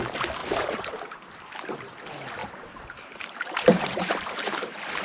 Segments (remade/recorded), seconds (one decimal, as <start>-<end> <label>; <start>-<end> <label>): 0.0-0.4 recorded; 0.4-0.9 remade; 0.9-2.4 recorded; 2.4-4.4 remade; 4.4-5.0 recorded